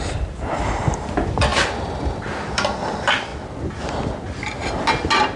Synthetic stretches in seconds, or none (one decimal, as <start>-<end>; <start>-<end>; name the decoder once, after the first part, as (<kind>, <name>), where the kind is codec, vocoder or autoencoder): 0.0-3.3 (vocoder, BigVGAN v2)